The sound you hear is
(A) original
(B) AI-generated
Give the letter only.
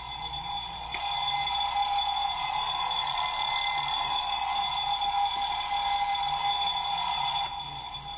A